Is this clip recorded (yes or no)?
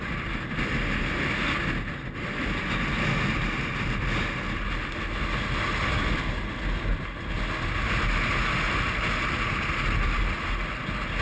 yes